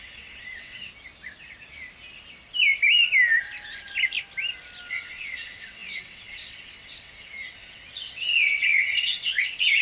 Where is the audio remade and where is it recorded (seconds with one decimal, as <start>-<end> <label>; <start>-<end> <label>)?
0.0-0.9 remade; 0.9-4.9 recorded; 4.9-9.8 remade